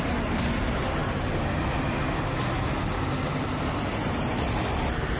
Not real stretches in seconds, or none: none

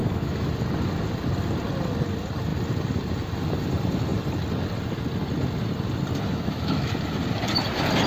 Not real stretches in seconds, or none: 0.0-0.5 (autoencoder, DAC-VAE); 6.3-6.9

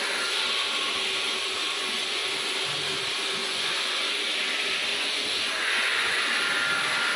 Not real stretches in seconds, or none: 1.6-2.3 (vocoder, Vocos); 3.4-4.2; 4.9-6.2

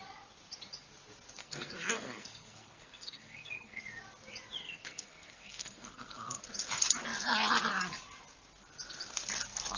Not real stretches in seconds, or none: 1.4-3.8 (codec, SNAC); 4.6-6.4

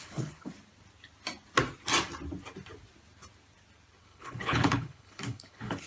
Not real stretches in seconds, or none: 0.0-0.5 (codec, HILCodec); 4.0-5.9

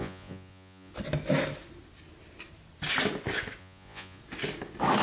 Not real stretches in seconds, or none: 0.0-0.9 (vocoder, Vocos); 3.6-4.2

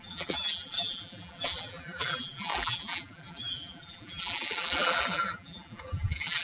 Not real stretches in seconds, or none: 0.0-6.4 (vocoder, BigVGAN v2)

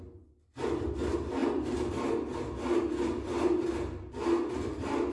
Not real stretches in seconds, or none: none